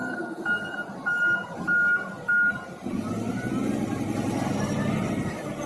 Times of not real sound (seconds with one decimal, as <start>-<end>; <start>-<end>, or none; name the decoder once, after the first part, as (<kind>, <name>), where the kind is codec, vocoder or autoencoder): none